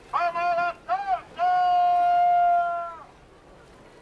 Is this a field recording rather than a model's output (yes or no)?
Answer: yes